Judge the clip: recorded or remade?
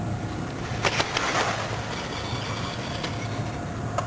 recorded